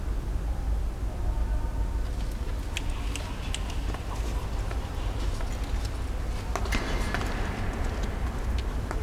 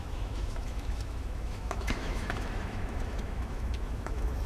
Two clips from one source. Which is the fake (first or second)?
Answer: second